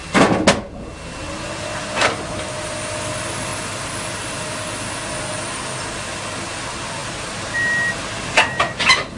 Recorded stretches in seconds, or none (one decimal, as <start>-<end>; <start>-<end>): 0.0-9.2